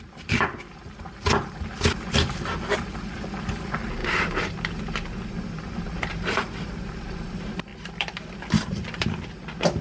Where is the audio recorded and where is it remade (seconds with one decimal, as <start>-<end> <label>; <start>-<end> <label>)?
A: 0.0-4.0 remade; 4.0-5.4 recorded; 5.4-9.8 remade